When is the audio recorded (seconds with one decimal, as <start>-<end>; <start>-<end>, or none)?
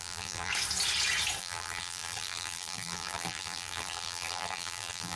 0.5-1.4